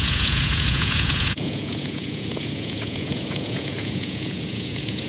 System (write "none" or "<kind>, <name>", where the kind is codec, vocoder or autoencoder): vocoder, Vocos